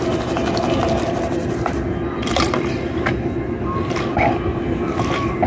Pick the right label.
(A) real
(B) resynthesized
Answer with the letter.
A